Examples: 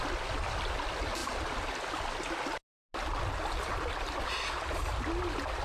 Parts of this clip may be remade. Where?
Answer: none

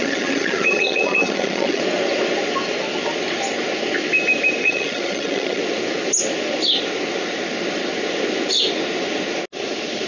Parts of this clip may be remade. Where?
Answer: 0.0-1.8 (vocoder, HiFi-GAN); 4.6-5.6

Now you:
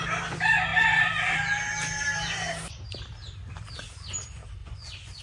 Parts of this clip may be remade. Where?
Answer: 4.6-5.2 (vocoder, Vocos)

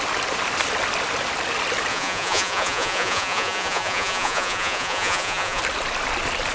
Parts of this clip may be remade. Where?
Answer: 1.9-5.6 (vocoder, Vocos)

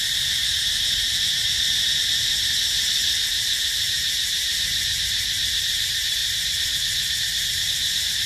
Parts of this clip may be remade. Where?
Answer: 0.0-8.3 (vocoder, BigVGAN v2)

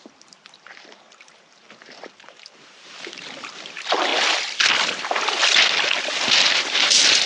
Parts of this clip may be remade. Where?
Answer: 0.0-4.1 (vocoder, BigVGAN v2); 6.2-7.3

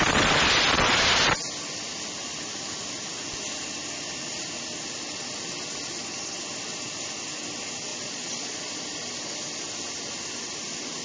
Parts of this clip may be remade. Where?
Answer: 7.9-8.8 (vocoder, Vocos)